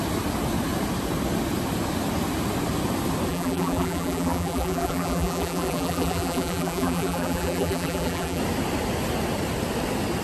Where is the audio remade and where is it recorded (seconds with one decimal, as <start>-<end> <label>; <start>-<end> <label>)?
0.0-3.3 recorded; 3.3-8.4 remade; 8.4-10.2 recorded